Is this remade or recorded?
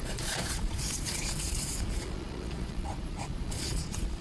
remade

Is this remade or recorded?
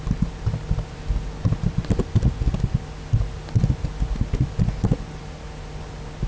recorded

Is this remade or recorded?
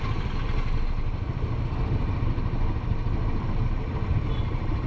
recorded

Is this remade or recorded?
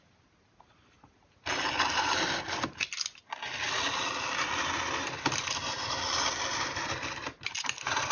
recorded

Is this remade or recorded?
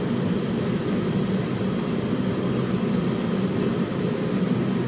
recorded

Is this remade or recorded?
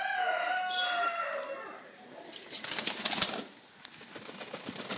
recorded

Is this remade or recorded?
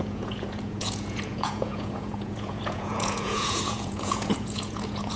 remade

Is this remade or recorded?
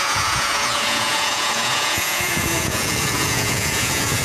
remade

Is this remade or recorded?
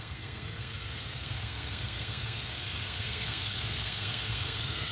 remade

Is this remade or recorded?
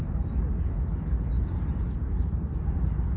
recorded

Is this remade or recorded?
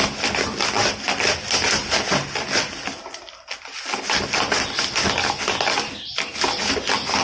recorded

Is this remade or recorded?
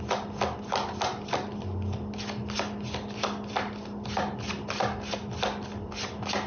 recorded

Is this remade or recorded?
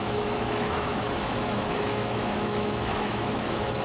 remade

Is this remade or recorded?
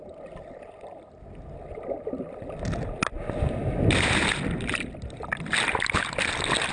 recorded